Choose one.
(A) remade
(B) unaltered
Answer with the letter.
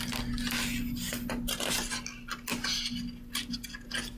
B